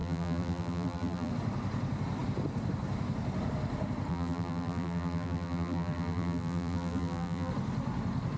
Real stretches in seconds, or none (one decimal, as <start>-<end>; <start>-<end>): 1.3-4.1; 7.5-8.4